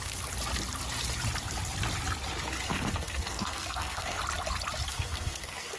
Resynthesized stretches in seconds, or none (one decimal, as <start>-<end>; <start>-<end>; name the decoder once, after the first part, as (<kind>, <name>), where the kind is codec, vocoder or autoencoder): 2.7-4.2 (codec, SNAC); 4.9-5.8